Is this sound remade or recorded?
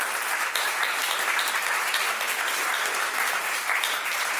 recorded